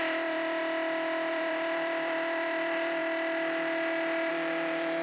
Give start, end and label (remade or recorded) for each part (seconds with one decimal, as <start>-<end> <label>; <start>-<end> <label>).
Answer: 0.0-0.6 remade; 0.6-1.3 recorded; 1.3-3.0 remade; 3.0-4.3 recorded; 4.3-5.0 remade